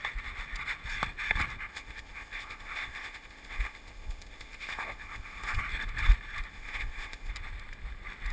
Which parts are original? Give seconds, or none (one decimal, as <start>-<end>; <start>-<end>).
0.0-1.7; 5.6-6.5; 7.3-8.3